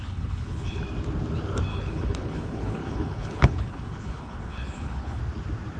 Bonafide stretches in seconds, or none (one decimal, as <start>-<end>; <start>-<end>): 0.8-1.7; 5.2-5.8